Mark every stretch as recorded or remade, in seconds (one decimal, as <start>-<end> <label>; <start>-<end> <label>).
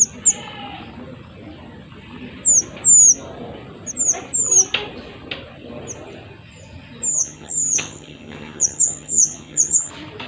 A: 0.0-7.1 recorded; 7.1-9.9 remade; 9.9-10.3 recorded